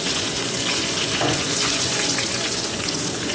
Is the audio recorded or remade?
remade